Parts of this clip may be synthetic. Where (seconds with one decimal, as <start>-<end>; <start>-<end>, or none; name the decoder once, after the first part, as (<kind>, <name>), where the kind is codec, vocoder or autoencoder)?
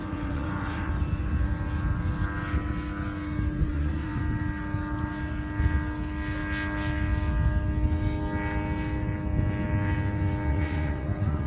0.0-0.9 (vocoder, Vocos); 3.6-4.2; 10.5-11.5